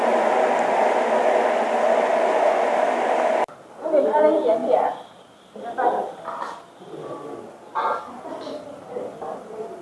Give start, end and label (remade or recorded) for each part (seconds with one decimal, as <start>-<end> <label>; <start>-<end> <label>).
0.0-9.8 recorded